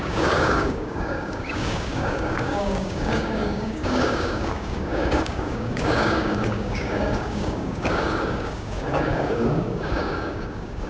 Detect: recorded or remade remade